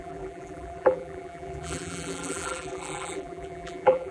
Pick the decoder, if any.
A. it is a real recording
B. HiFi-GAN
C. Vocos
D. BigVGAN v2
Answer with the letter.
D